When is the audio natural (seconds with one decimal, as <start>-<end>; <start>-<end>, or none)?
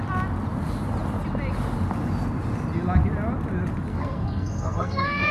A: 0.0-3.9